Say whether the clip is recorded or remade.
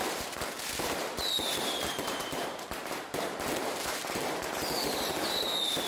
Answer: remade